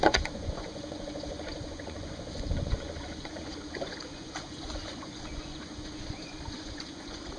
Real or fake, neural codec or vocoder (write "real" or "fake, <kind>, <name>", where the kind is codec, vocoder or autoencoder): fake, vocoder, Vocos